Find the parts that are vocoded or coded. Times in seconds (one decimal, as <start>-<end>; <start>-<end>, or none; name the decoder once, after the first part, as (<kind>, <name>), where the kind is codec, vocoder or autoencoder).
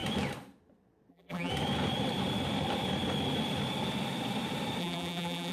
1.1-1.5 (vocoder, BigVGAN v2); 4.8-5.5